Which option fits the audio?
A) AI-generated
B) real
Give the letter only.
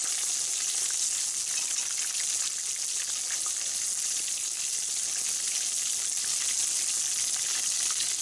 B